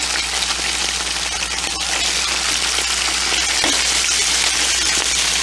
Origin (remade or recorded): recorded